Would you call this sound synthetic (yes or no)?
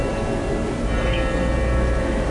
no